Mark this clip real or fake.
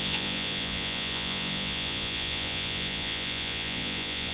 fake